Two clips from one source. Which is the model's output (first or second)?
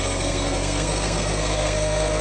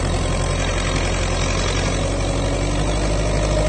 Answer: first